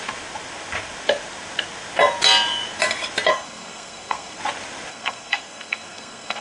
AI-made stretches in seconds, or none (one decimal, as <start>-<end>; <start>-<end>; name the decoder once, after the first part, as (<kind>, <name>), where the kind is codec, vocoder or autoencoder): 3.3-4.4 (codec, SNAC); 4.9-6.4